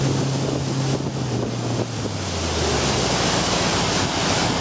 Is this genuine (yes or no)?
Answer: yes